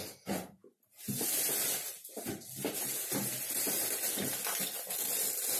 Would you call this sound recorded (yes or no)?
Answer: yes